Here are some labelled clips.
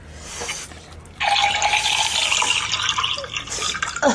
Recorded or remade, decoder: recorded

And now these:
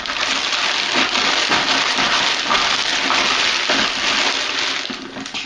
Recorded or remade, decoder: recorded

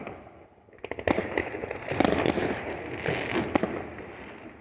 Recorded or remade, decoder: recorded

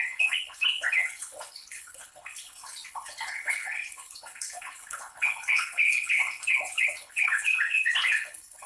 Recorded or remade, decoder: remade, codec, HILCodec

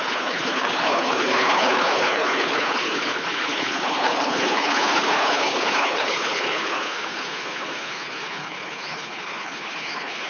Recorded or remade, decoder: remade, codec, HILCodec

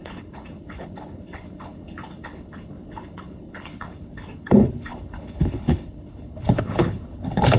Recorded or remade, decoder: remade, codec, HILCodec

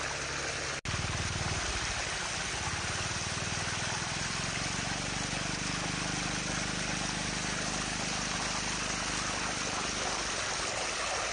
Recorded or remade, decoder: recorded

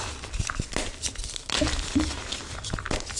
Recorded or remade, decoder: recorded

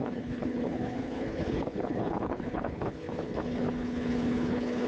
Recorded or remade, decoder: remade, codec, HILCodec